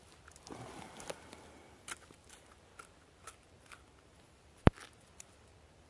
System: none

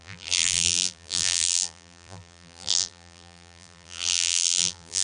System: vocoder, BigVGAN v2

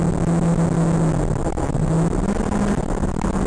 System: none